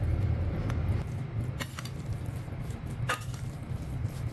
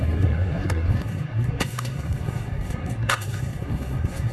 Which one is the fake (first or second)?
second